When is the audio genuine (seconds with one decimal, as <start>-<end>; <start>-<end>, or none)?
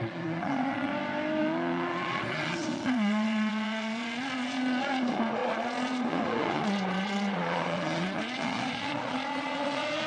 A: 0.9-1.4